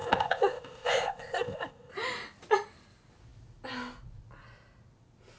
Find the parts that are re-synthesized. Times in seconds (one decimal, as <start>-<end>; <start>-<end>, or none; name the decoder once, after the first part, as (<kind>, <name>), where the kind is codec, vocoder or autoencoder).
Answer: 0.0-1.9 (codec, ZipCodec)